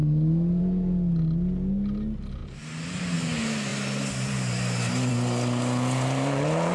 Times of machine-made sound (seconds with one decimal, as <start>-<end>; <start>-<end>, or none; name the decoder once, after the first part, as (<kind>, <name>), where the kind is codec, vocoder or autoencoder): 2.4-3.0 (vocoder, BigVGAN v2)